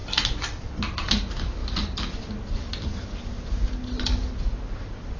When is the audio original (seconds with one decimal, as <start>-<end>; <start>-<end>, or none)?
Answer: 0.0-5.2